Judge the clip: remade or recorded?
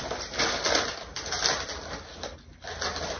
recorded